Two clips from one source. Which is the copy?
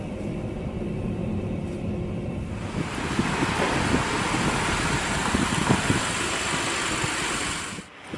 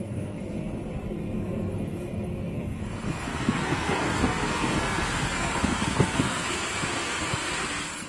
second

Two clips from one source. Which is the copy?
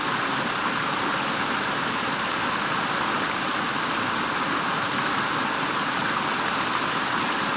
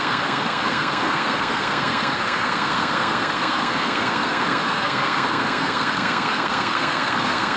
second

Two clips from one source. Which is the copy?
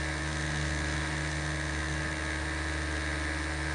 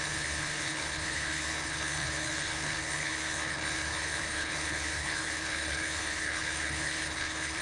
second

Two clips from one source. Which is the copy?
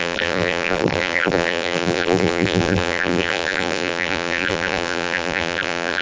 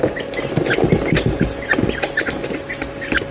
first